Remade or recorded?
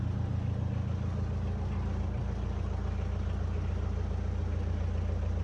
recorded